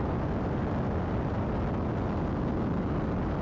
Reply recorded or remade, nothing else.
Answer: recorded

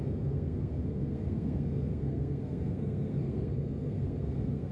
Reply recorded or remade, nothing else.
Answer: remade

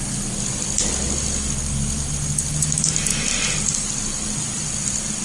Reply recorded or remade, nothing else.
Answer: recorded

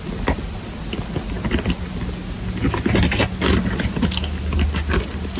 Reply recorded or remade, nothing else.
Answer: recorded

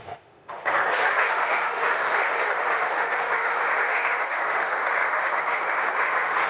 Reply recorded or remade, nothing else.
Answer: remade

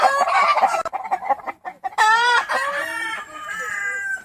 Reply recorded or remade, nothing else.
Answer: remade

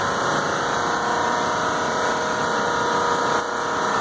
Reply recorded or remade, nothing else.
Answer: recorded